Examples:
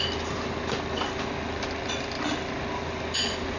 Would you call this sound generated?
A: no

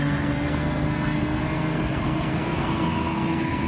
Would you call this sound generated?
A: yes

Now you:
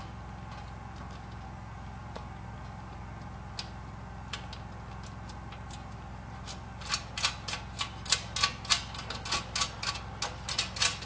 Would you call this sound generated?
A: no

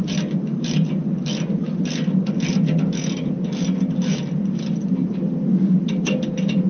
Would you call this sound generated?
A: no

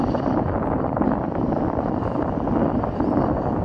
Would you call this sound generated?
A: no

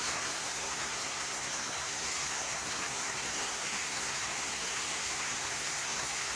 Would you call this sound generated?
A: yes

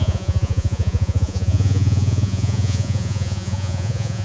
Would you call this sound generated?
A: yes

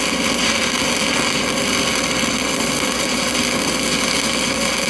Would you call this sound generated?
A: no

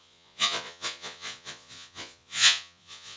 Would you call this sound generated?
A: yes